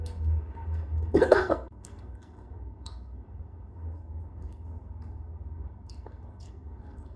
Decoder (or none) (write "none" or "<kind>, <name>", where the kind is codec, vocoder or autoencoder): codec, SNAC